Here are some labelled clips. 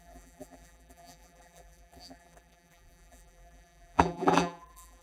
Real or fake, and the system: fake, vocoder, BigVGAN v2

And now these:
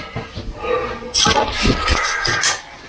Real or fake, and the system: real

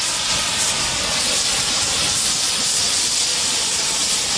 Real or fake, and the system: real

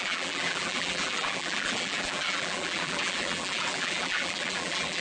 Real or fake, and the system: fake, vocoder, BigVGAN v2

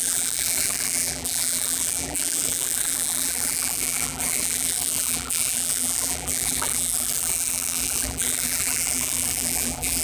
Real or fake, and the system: fake, vocoder, BigVGAN v2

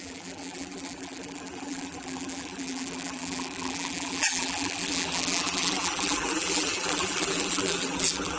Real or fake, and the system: fake, vocoder, BigVGAN v2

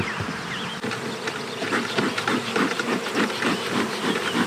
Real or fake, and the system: real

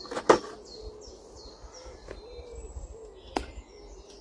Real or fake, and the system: real